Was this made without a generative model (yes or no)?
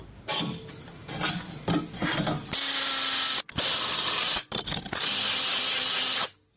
yes